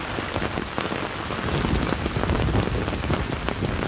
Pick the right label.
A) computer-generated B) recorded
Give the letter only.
B